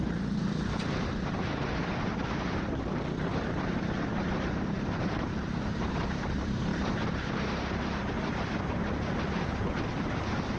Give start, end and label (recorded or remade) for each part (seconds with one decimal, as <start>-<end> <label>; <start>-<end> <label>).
0.0-6.7 remade; 6.7-7.3 recorded; 7.3-10.6 remade